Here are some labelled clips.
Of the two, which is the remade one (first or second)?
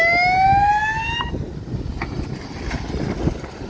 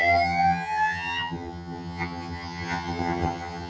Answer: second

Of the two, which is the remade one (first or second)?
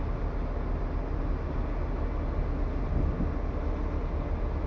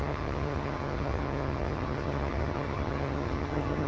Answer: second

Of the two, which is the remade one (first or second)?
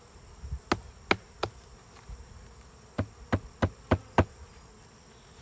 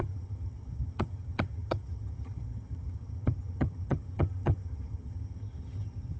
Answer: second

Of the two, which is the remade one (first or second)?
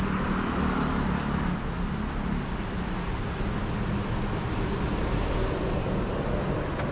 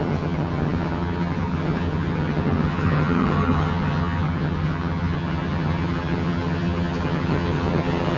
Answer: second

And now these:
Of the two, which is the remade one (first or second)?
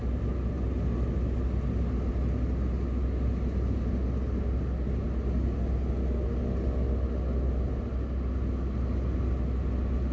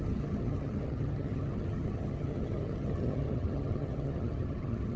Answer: second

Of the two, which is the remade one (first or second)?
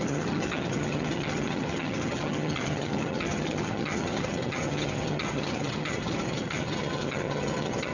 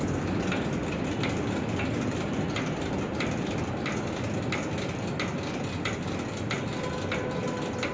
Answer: first